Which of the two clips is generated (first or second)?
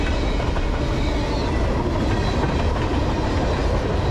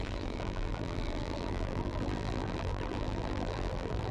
second